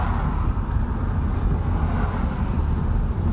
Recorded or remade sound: recorded